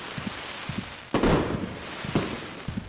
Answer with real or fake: real